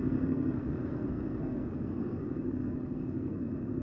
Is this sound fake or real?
fake